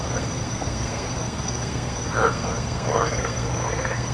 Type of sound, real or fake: fake